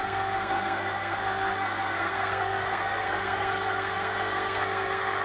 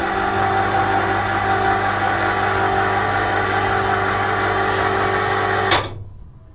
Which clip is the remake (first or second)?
first